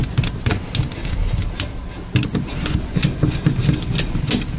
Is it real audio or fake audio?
real